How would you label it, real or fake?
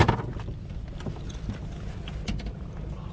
real